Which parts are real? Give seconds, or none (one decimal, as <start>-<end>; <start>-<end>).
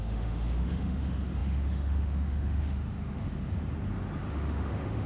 3.6-4.2